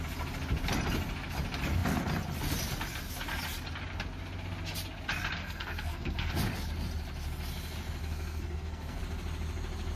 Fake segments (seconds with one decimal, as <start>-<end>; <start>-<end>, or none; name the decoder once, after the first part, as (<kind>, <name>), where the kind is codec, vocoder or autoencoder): 5.4-6.3 (codec, SNAC); 8.0-9.0